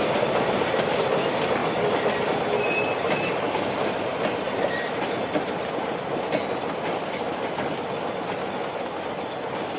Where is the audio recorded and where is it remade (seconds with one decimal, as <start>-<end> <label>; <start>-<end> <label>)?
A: 0.0-9.8 recorded